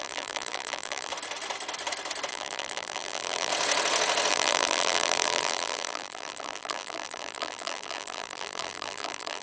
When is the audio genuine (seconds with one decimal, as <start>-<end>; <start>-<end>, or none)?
1.1-2.3; 3.5-4.3